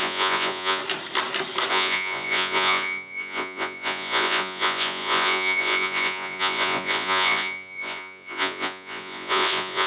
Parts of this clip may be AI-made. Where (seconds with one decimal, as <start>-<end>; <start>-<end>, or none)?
0.0-0.8; 1.7-9.9